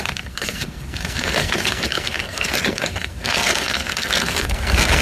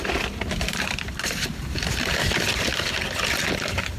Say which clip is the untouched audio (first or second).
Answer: second